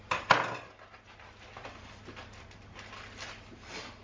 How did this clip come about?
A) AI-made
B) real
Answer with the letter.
B